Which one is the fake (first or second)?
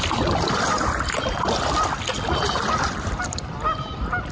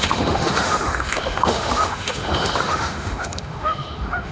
second